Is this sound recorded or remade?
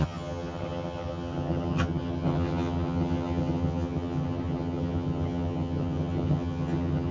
remade